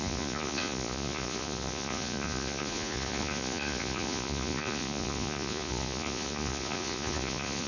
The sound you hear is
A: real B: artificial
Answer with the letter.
B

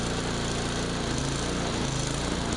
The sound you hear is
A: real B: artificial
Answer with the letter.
A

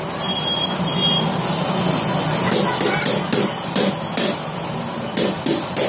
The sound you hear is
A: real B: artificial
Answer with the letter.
A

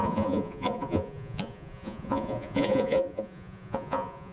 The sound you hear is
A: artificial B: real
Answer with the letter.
A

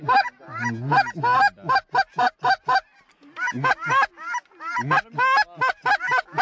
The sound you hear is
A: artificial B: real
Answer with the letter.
B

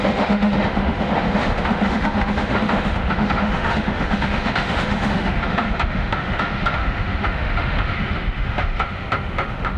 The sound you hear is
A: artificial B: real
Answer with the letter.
A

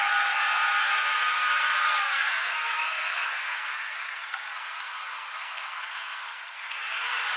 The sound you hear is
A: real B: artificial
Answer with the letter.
B